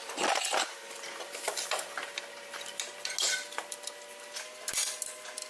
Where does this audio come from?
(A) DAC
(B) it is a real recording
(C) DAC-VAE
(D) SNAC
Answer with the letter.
B